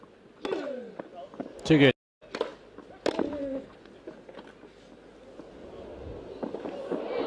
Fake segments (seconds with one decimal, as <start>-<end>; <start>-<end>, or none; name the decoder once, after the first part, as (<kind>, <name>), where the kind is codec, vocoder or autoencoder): 2.5-3.0 (vocoder, BigVGAN v2)